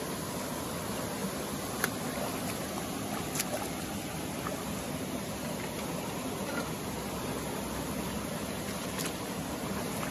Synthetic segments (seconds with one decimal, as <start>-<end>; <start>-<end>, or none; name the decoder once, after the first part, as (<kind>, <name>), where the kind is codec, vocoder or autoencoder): none